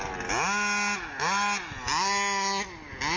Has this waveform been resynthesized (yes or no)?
no